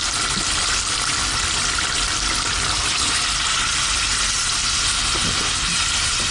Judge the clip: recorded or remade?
recorded